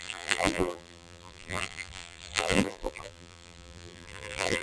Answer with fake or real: fake